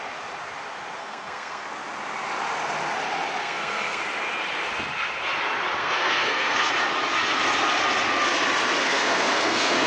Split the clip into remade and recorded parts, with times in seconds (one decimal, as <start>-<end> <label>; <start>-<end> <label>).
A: 0.0-1.0 recorded; 1.0-1.7 remade; 1.7-3.4 recorded; 3.4-4.0 remade; 4.0-5.8 recorded; 5.8-6.7 remade; 6.7-8.8 recorded; 8.8-9.9 remade